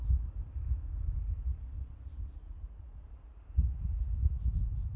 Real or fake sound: real